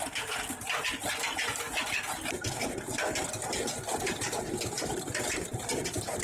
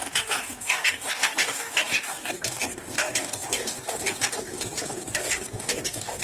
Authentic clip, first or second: first